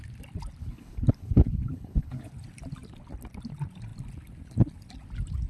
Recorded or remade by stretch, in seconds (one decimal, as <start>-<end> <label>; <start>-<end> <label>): 0.0-0.6 recorded; 0.6-2.3 remade; 2.3-5.5 recorded